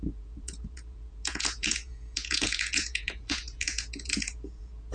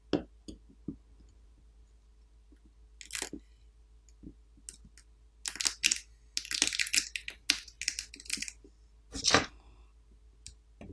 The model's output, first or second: first